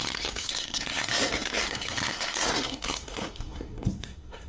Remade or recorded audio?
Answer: remade